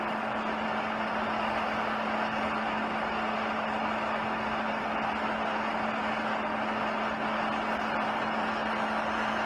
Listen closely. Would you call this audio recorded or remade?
recorded